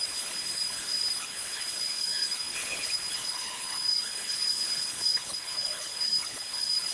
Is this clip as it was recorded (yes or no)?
no